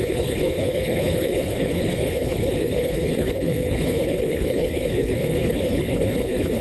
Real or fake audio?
fake